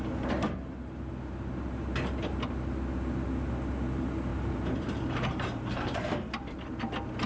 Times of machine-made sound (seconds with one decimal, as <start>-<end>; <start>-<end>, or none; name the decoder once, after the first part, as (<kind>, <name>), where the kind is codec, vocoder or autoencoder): 4.3-6.1 (vocoder, BigVGAN v2)